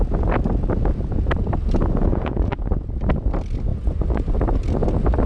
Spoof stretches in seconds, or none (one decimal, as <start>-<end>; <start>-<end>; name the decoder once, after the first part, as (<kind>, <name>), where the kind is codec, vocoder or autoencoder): 2.1-2.8 (vocoder, Vocos); 3.7-4.3